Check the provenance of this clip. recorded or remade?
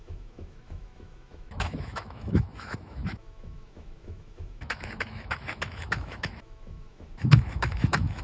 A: remade